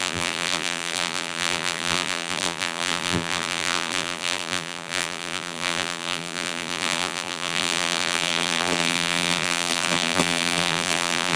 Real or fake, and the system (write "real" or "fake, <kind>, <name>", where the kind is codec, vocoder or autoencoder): fake, vocoder, BigVGAN v2